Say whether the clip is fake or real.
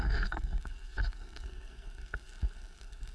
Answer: fake